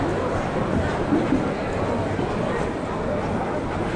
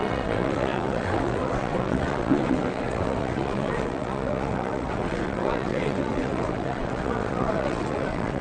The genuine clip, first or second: first